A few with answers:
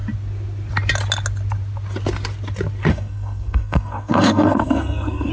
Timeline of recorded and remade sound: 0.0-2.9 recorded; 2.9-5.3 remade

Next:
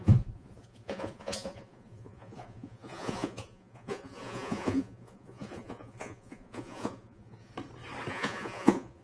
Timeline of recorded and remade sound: 0.0-7.5 remade; 7.5-8.1 recorded; 8.1-9.0 remade

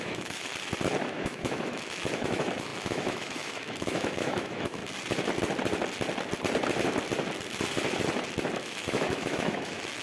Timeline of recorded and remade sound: 0.0-0.5 remade; 0.5-1.0 recorded; 1.0-4.8 remade; 4.8-8.6 recorded; 8.6-10.0 remade

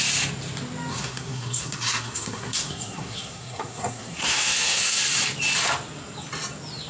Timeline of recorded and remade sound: 0.0-0.9 recorded; 0.9-5.0 remade; 5.0-6.9 recorded

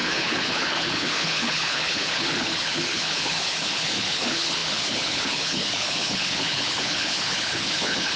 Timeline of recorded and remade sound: 0.0-8.2 remade

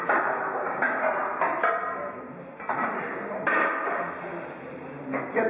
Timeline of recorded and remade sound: 0.0-5.5 recorded

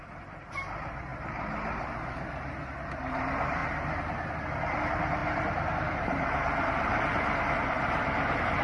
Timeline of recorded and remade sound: 0.0-3.6 remade; 3.6-4.8 recorded; 4.8-8.6 remade